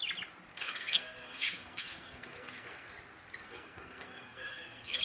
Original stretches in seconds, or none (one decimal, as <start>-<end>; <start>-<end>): 0.0-0.5; 2.9-3.4